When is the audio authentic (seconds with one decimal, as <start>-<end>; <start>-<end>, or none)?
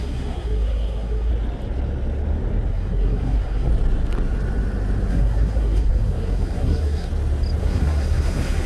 1.3-2.7; 3.7-5.1; 7.1-7.6